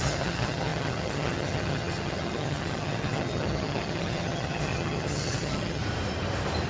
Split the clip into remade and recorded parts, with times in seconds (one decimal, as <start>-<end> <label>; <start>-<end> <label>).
0.0-5.8 remade; 5.8-6.7 recorded